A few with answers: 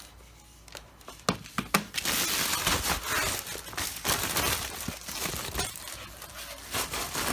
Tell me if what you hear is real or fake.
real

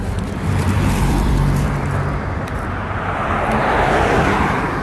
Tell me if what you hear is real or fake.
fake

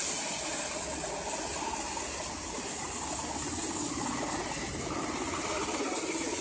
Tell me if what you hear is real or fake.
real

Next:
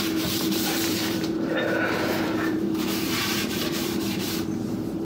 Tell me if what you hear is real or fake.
fake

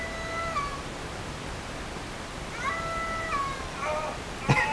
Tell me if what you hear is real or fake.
fake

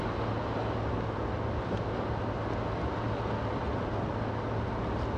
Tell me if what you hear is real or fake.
real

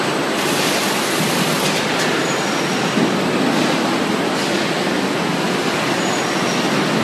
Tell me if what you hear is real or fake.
real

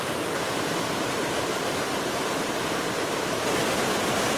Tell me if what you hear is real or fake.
real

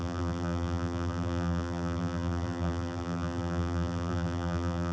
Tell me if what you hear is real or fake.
fake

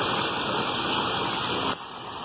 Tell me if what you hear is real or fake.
real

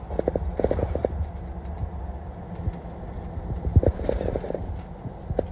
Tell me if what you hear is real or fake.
real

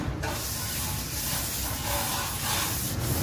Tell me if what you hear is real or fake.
real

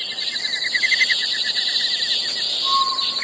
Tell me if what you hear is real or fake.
real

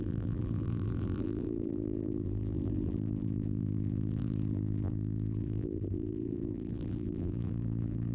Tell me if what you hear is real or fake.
fake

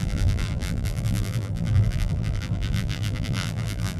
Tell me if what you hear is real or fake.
fake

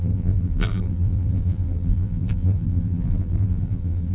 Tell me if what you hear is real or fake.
fake